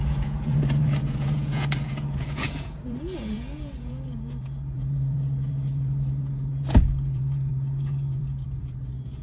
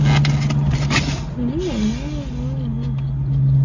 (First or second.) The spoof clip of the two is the first